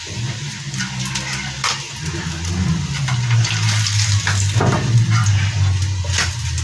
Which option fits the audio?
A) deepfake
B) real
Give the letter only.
B